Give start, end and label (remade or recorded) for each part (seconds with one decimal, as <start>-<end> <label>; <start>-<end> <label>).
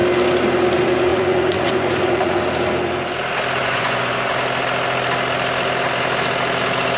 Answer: 0.0-1.1 recorded; 1.1-2.4 remade; 2.4-3.6 recorded; 3.6-4.3 remade; 4.3-7.0 recorded